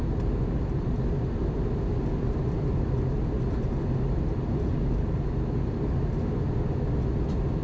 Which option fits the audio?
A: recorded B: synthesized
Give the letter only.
A